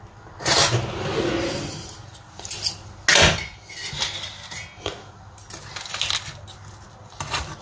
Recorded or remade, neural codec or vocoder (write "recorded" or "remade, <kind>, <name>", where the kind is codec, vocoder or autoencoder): recorded